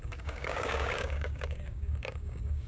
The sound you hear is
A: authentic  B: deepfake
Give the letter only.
B